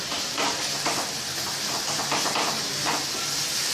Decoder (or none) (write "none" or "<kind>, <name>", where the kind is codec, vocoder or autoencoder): none